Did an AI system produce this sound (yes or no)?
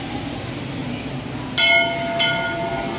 no